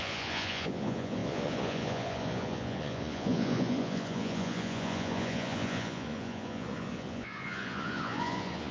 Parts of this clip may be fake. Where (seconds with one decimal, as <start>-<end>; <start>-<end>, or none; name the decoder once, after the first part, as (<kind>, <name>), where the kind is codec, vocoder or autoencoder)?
0.0-8.7 (vocoder, Vocos)